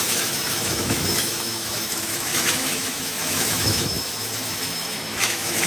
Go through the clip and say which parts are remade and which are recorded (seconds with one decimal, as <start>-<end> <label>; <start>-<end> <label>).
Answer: 0.0-5.7 remade